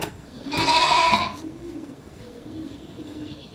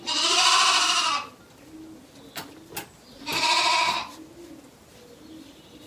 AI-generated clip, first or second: first